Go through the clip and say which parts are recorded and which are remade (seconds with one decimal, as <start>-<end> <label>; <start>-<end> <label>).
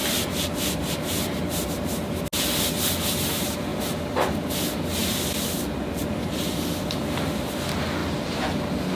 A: 0.0-2.2 remade; 2.2-5.0 recorded; 5.0-6.9 remade; 6.9-9.0 recorded